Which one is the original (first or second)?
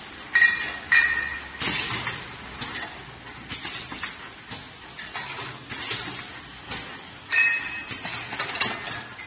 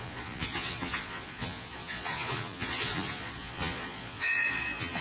first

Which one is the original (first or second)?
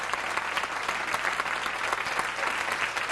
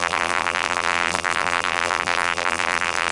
first